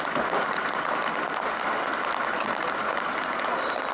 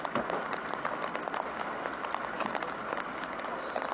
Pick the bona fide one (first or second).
first